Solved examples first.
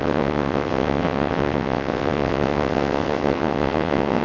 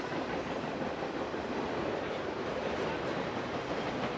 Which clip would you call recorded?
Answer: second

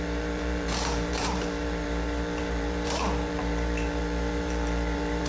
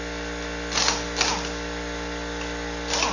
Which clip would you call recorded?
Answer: second